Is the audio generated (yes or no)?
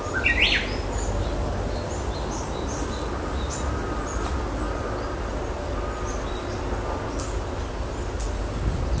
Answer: no